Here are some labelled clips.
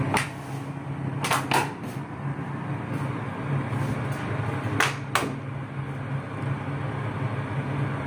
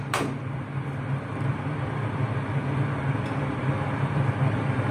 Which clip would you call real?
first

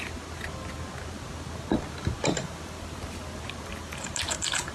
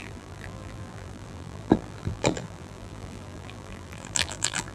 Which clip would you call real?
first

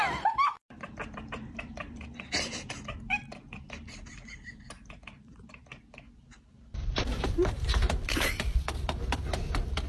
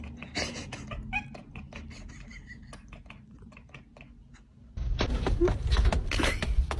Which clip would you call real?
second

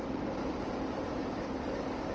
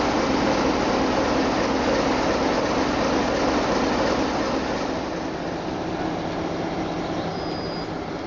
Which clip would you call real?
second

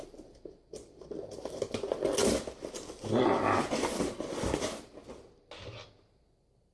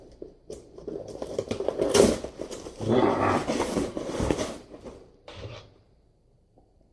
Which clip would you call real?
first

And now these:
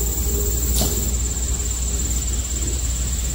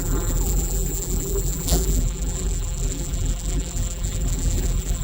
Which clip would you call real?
first